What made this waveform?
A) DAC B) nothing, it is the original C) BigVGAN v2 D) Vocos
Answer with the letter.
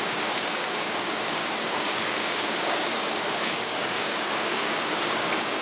A